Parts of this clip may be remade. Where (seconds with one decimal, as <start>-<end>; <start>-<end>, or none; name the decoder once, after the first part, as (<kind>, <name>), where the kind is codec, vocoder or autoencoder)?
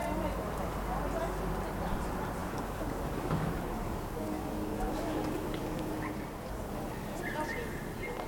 2.4-6.1 (codec, DAC)